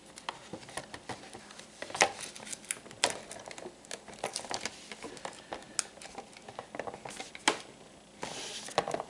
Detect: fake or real real